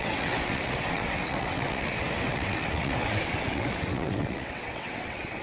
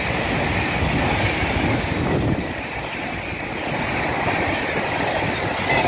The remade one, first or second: first